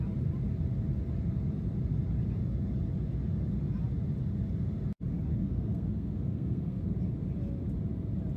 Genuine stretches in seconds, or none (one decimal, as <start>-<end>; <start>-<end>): 0.0-5.3; 6.8-8.4